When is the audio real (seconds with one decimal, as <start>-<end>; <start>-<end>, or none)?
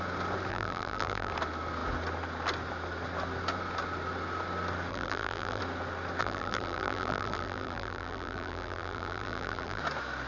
0.0-0.5; 1.3-4.9; 5.6-6.2; 9.8-10.3